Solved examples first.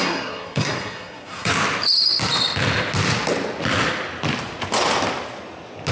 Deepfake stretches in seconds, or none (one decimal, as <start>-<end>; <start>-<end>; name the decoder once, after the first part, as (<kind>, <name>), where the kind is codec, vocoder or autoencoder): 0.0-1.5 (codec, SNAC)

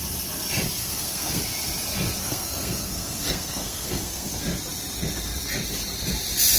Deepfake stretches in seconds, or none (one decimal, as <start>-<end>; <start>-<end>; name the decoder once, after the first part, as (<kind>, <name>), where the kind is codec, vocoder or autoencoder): 0.8-1.4 (codec, SNAC); 2.2-4.3

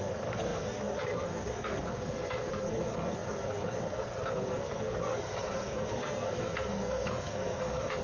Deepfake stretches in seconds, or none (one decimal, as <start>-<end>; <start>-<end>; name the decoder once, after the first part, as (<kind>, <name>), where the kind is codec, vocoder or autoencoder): 0.0-8.0 (codec, SNAC)

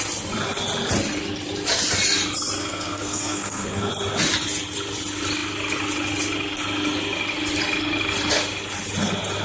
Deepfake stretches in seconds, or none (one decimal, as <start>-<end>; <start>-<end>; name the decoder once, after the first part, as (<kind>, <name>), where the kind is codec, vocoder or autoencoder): 2.6-3.9 (codec, SNAC)